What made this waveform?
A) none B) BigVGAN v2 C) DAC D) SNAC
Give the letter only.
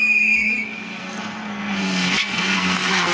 D